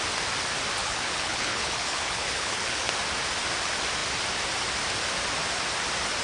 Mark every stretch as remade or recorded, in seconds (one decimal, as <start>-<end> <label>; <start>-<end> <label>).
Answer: 0.0-0.8 recorded; 0.8-2.9 remade; 2.9-6.2 recorded

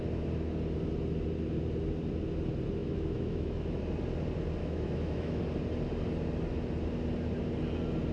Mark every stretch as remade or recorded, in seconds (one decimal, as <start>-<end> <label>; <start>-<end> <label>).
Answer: 0.0-2.8 recorded; 2.8-3.8 remade; 3.8-4.6 recorded; 4.6-5.4 remade; 5.4-8.1 recorded

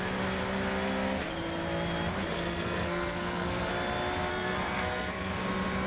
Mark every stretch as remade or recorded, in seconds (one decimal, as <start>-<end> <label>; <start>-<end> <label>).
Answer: 0.0-2.3 recorded; 2.3-3.7 remade; 3.7-4.3 recorded; 4.3-5.3 remade; 5.3-5.9 recorded

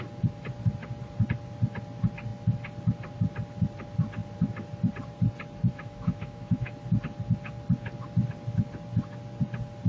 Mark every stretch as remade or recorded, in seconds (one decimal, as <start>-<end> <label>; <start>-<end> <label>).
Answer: 0.0-5.7 recorded; 5.7-6.7 remade; 6.7-9.9 recorded

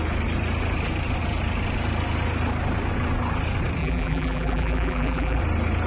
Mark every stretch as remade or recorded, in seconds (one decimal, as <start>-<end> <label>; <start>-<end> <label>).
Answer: 0.0-3.8 recorded; 3.8-5.4 remade; 5.4-5.9 recorded